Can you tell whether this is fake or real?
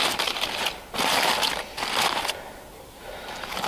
real